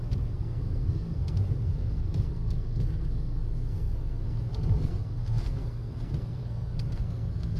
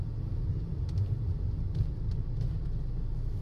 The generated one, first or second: first